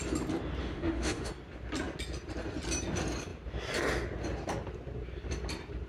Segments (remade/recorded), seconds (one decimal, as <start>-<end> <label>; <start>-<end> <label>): 0.0-0.6 recorded; 0.6-1.3 remade; 1.3-5.9 recorded